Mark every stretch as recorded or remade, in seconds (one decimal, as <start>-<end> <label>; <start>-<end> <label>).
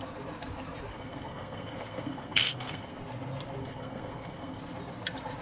0.0-0.9 recorded; 0.9-3.0 remade; 3.0-3.6 recorded; 3.6-4.6 remade; 4.6-5.4 recorded